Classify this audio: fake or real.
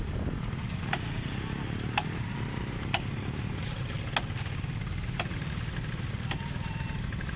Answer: real